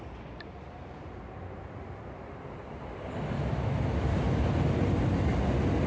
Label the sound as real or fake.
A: real